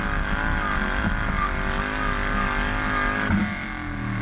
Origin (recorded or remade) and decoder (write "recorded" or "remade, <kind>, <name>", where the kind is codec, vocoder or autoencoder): recorded